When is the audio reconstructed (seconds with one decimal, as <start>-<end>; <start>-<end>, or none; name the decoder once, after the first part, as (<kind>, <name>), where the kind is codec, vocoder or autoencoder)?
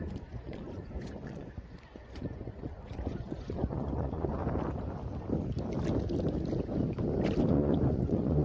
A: 0.0-4.4 (vocoder, Vocos); 7.5-8.4